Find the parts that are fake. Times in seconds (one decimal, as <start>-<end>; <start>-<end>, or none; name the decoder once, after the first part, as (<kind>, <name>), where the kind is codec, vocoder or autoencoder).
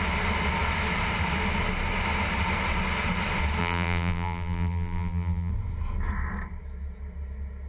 3.6-5.5 (vocoder, BigVGAN v2)